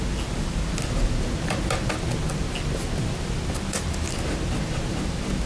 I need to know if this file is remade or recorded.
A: recorded